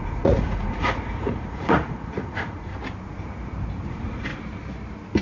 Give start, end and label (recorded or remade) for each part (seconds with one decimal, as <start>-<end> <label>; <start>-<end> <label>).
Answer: 0.0-2.7 remade; 2.7-3.9 recorded; 3.9-4.3 remade; 4.3-5.2 recorded